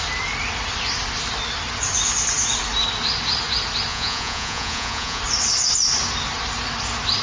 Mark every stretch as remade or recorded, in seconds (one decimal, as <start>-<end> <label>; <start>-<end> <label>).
0.0-3.9 recorded; 3.9-5.2 remade; 5.2-7.2 recorded

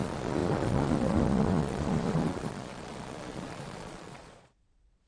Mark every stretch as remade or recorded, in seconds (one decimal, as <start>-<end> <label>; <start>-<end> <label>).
0.0-5.1 remade

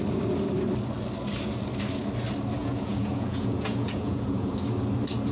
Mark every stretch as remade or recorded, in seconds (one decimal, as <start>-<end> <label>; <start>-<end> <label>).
0.0-2.6 recorded; 2.6-4.5 remade; 4.5-5.3 recorded

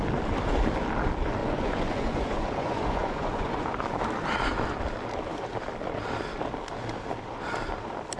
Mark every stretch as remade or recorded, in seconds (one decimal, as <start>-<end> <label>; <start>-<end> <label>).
0.0-1.4 recorded; 1.4-4.0 remade; 4.0-8.2 recorded

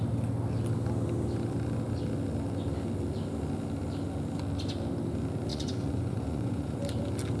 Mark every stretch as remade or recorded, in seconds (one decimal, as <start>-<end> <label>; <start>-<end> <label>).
0.0-5.5 recorded; 5.5-6.8 remade; 6.8-7.4 recorded

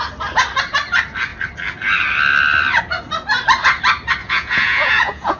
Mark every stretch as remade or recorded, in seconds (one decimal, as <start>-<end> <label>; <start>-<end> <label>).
0.0-4.2 recorded; 4.2-5.4 remade